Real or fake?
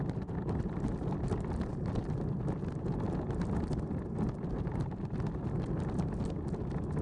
real